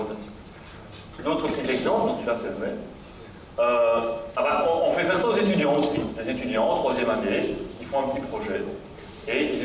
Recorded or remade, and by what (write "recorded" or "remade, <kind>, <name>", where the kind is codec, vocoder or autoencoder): recorded